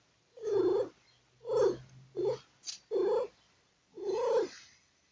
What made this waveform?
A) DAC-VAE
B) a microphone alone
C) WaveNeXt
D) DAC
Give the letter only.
B